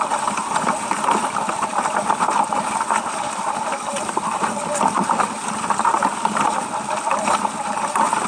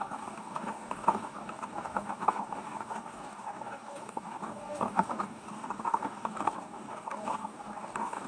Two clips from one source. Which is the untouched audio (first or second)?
first